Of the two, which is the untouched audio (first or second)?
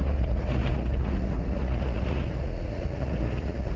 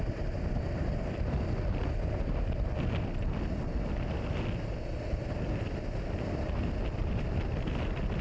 second